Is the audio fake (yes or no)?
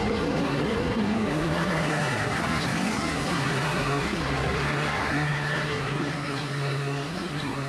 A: yes